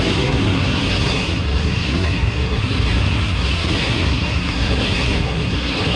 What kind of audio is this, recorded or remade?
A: remade